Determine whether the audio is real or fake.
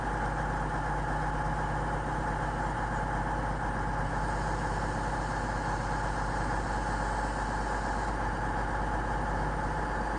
real